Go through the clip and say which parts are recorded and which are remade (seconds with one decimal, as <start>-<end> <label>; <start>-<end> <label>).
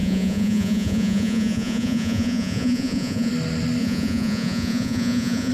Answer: 0.0-3.3 remade; 3.3-3.8 recorded; 3.8-5.5 remade